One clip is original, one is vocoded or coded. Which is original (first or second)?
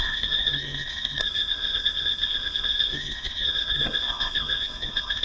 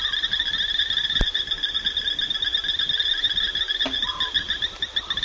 second